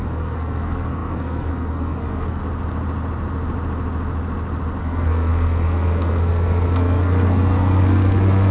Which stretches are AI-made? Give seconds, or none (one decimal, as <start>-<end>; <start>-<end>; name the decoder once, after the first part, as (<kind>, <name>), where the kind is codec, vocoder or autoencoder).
0.0-2.4 (codec, SNAC); 4.8-8.5